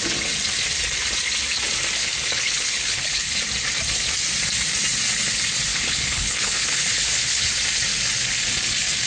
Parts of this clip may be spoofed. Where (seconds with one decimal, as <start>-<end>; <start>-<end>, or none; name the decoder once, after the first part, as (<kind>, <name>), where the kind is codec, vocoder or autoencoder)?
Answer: 2.0-3.4 (codec, HILCodec); 5.7-7.5